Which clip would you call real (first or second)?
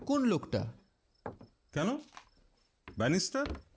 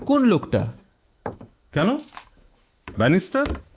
first